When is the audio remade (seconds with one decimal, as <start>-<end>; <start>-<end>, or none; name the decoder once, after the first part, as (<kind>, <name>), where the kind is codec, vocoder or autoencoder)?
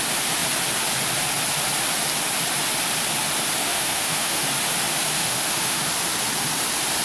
3.6-4.4 (autoencoder, DAC-VAE); 5.2-5.9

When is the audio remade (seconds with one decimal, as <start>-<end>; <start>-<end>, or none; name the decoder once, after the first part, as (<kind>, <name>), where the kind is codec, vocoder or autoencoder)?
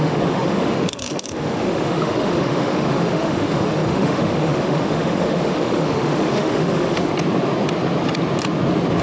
0.0-7.1 (autoencoder, DAC-VAE)